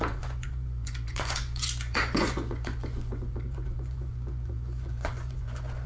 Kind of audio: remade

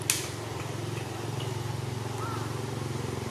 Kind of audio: recorded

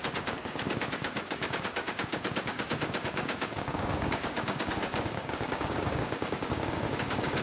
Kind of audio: remade